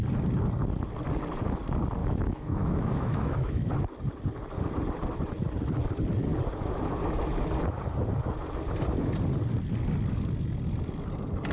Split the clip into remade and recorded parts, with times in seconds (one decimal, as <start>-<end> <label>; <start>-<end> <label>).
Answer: 0.0-2.0 recorded; 2.0-3.7 remade; 3.7-11.5 recorded